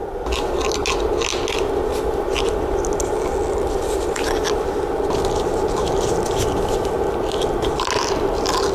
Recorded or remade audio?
recorded